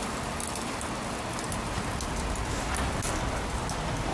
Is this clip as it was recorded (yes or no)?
yes